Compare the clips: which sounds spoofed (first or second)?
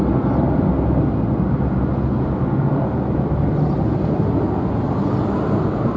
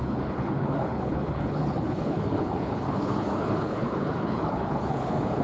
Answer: second